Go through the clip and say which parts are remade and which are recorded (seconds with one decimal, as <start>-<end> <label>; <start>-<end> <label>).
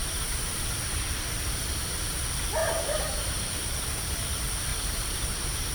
0.0-1.0 remade; 1.0-2.6 recorded; 2.6-3.7 remade; 3.7-4.7 recorded; 4.7-5.7 remade